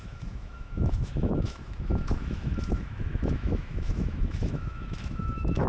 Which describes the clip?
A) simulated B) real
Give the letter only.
A